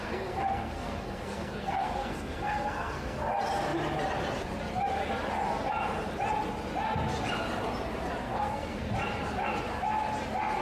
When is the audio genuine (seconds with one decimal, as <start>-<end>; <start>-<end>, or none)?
3.2-8.2; 8.9-10.6